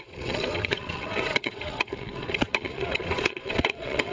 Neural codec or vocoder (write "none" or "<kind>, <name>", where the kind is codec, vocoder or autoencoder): vocoder, WaveNeXt